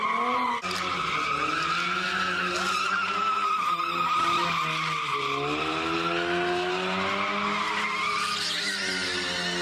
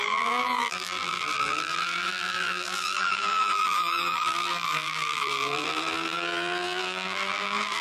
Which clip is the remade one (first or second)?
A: second